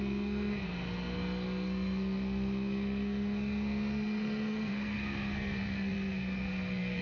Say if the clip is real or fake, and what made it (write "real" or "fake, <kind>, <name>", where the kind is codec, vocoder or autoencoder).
fake, codec, SNAC